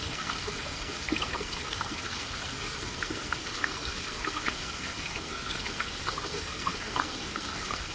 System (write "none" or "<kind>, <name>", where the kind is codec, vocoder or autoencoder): codec, SNAC